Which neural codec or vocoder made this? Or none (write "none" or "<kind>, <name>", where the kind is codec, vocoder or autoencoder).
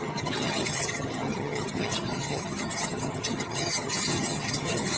vocoder, HiFi-GAN